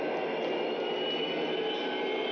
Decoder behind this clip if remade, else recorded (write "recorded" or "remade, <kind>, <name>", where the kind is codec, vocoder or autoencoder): recorded